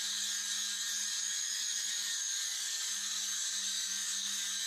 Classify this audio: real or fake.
fake